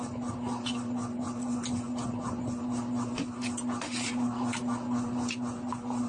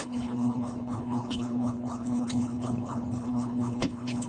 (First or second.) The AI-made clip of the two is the second